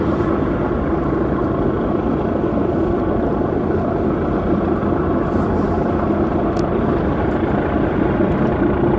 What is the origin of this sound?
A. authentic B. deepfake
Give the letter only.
A